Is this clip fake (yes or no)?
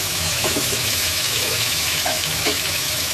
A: yes